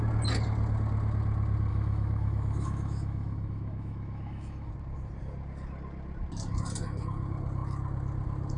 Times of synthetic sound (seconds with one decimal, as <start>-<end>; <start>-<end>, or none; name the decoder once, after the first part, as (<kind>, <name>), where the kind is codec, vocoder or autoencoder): 1.7-4.7 (autoencoder, DAC-VAE)